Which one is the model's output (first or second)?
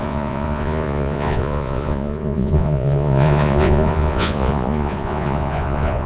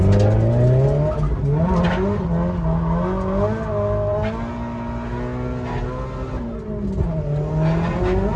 first